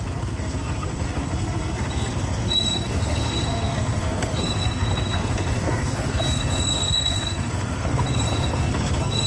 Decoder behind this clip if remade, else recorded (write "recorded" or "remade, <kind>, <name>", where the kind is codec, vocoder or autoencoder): remade, codec, SNAC